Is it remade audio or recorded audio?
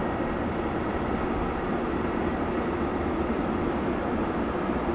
recorded